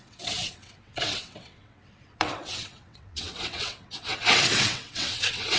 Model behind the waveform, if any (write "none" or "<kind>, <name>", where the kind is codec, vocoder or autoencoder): vocoder, WaveNeXt